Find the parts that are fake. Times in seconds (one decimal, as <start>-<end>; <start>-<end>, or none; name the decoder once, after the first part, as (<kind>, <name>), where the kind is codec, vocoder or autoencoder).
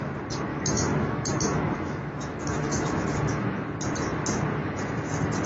0.5-3.8 (autoencoder, DAC-VAE); 4.6-5.1